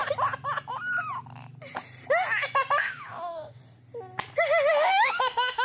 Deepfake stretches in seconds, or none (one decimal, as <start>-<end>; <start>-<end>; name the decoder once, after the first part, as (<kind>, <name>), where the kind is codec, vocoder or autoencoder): 2.8-3.6 (autoencoder, DAC-VAE); 4.7-5.6